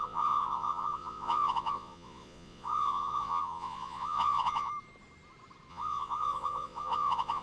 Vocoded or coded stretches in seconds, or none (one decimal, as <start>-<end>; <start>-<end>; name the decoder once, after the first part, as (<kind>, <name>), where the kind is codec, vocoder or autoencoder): 0.0-4.7 (vocoder, Vocos); 5.7-7.4